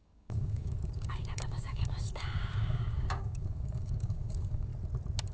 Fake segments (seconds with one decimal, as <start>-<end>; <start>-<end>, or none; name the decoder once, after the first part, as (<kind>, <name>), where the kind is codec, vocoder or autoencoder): 0.0-4.7 (codec, DAC)